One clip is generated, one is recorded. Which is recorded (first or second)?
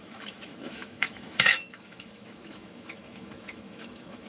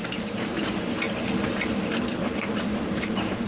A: second